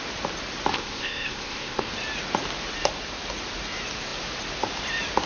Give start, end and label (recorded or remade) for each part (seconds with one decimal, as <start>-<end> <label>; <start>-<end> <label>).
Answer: 0.0-0.7 recorded; 0.7-1.9 remade; 1.9-5.3 recorded